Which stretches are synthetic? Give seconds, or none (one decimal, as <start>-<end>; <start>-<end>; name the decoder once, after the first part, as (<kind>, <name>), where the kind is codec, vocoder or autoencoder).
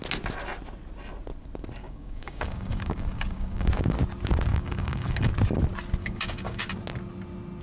1.8-3.7 (codec, DAC); 4.5-5.3; 6.0-6.6